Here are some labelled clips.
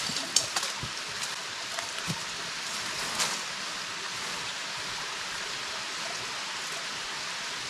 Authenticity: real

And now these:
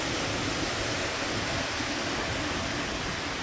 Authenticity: real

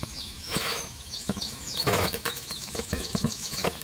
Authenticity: fake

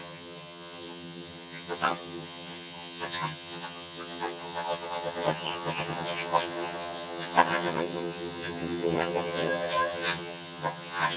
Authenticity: fake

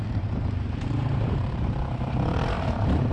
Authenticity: fake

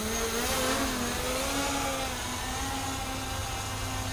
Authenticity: real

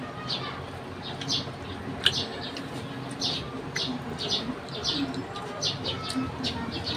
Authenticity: real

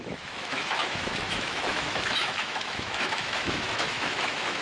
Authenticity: fake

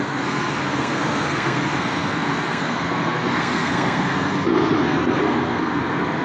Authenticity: fake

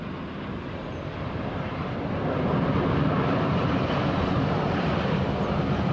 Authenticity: real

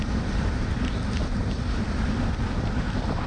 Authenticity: real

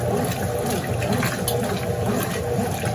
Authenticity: real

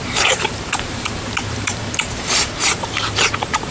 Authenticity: fake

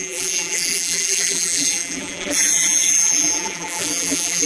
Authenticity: fake